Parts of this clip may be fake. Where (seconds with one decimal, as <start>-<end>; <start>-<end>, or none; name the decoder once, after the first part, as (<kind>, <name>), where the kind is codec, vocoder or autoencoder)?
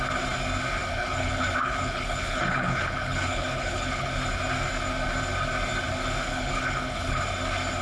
0.9-4.1 (codec, HILCodec); 6.3-7.2